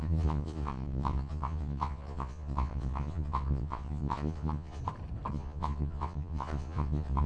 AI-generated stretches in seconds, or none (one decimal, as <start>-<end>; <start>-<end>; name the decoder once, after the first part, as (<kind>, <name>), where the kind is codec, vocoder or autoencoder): 0.0-4.8 (vocoder, Vocos); 5.3-7.3